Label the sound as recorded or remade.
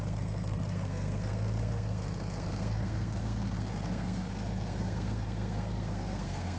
remade